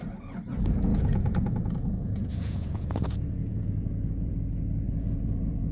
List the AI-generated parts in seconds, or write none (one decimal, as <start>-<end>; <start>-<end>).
0.9-4.3; 4.9-5.7